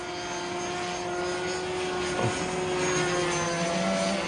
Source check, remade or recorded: recorded